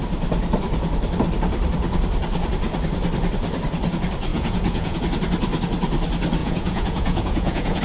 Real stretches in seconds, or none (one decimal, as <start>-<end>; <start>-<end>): 0.0-4.3; 5.0-6.4